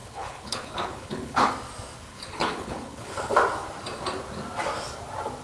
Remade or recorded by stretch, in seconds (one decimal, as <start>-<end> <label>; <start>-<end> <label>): 0.0-1.5 remade; 1.5-2.1 recorded; 2.1-3.3 remade; 3.3-5.4 recorded